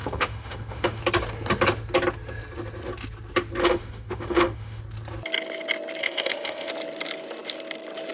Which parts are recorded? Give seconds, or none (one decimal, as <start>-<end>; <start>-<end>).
1.0-3.6; 4.8-6.0; 6.7-8.1